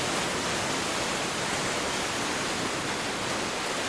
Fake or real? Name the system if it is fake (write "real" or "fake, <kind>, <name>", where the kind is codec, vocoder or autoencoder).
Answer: real